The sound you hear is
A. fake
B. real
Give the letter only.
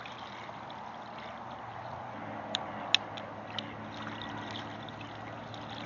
B